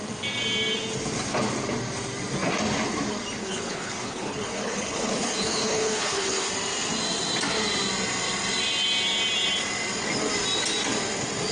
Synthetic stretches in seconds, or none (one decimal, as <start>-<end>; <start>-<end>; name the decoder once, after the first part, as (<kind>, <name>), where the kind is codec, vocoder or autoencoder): 3.4-6.5 (codec, HILCodec)